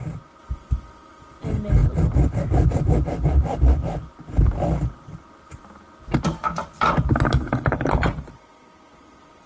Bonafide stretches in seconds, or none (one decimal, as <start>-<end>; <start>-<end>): 0.0-9.5